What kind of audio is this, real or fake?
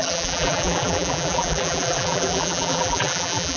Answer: fake